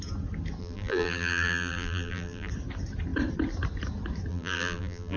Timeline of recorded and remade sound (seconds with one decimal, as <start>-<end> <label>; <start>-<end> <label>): 0.0-0.6 recorded; 0.6-2.5 remade; 2.5-4.3 recorded; 4.3-5.2 remade

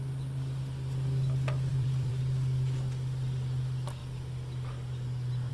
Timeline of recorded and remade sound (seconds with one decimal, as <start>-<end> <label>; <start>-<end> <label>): 0.0-1.7 recorded; 1.7-2.2 remade; 2.2-5.5 recorded

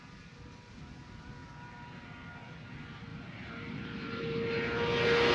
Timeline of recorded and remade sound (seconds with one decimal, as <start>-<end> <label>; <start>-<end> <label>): 0.0-3.1 recorded; 3.1-4.2 remade; 4.2-5.3 recorded

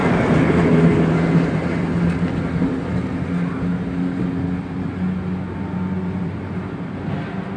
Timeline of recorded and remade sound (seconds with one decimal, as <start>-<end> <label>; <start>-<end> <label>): 0.0-7.6 recorded

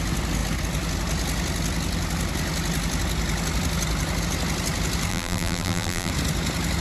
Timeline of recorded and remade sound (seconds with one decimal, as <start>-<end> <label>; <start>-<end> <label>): 0.0-5.1 recorded; 5.1-6.1 remade; 6.1-6.8 recorded

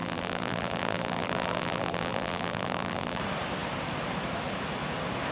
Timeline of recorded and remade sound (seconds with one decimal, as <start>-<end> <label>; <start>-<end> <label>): 0.0-3.2 remade; 3.2-5.3 recorded